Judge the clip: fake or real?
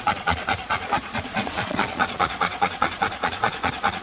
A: fake